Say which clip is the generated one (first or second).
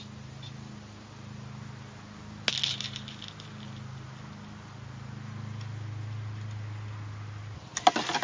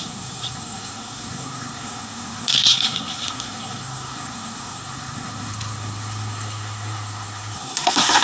second